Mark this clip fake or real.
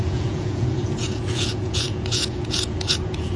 fake